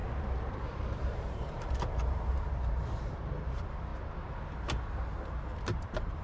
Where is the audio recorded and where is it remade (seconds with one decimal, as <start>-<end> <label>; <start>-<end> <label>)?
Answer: 0.0-3.9 remade; 3.9-5.6 recorded; 5.6-6.2 remade